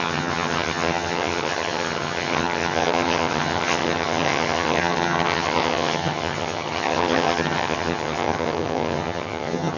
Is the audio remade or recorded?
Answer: remade